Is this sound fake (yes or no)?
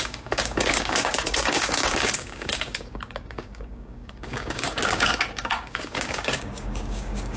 yes